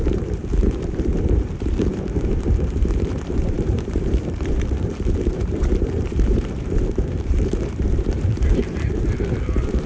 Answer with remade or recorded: remade